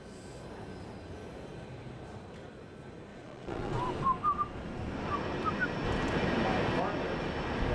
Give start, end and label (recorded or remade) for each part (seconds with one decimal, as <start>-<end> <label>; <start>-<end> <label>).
0.0-3.1 recorded; 3.1-3.8 remade; 3.8-7.7 recorded